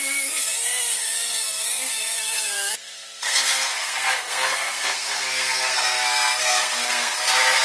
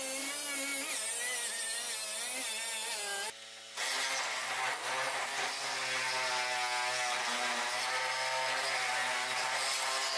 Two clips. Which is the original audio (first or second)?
second